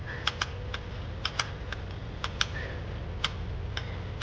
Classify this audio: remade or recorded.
recorded